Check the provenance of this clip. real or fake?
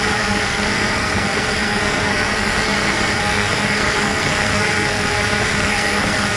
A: fake